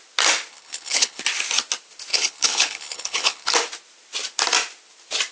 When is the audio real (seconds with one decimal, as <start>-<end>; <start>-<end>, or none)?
0.0-0.5; 1.2-2.1; 3.5-5.3